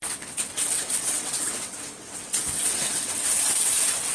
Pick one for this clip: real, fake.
fake